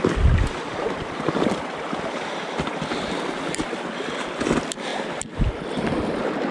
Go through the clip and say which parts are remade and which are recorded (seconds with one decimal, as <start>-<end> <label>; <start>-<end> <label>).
0.0-6.5 recorded